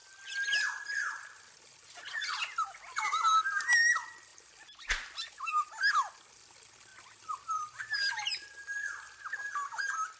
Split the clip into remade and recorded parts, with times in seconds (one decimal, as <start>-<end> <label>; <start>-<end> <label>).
0.0-0.8 remade; 0.8-6.9 recorded; 6.9-9.4 remade; 9.4-10.2 recorded